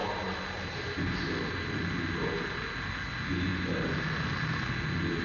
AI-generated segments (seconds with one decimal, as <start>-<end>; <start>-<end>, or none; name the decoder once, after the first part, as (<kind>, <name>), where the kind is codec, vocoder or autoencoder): none